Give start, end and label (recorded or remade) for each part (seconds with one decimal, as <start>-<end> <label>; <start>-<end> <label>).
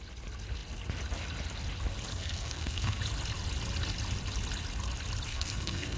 0.0-2.1 recorded; 2.1-3.0 remade; 3.0-5.3 recorded; 5.3-6.0 remade